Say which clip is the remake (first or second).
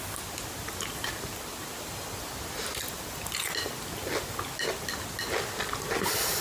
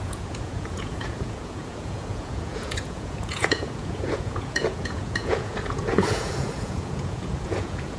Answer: second